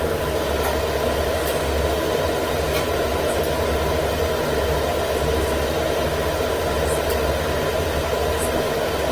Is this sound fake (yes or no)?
no